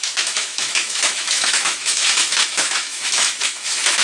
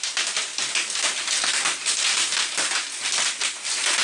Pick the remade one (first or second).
first